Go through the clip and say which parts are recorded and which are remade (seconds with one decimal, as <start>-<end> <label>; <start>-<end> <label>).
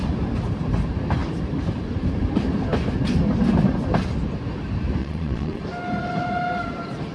0.0-5.0 recorded; 5.0-5.6 remade; 5.6-7.1 recorded